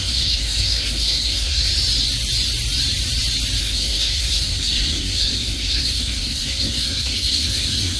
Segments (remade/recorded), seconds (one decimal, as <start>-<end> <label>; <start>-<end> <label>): 0.0-1.7 remade; 1.7-3.6 recorded; 3.6-8.0 remade